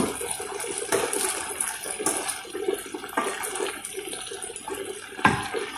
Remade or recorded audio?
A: recorded